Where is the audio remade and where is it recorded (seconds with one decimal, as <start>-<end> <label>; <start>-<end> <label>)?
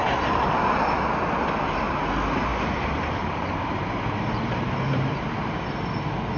0.0-0.5 remade; 0.5-2.5 recorded; 2.5-5.6 remade; 5.6-6.4 recorded